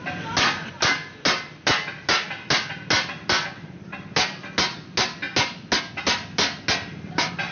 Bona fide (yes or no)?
yes